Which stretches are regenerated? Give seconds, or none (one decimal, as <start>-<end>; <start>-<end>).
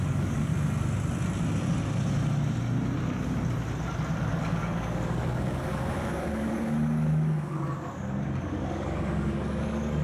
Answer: 0.0-0.5; 4.4-10.0